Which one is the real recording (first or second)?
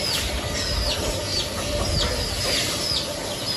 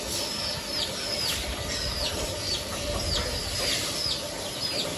first